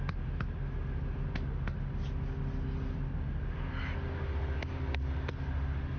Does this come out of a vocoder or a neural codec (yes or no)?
no